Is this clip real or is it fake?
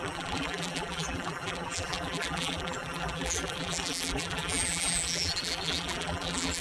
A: fake